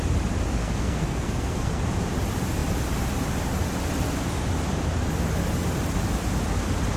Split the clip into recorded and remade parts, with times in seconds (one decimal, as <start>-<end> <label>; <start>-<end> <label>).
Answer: 0.0-0.6 recorded; 0.6-1.8 remade; 1.8-7.0 recorded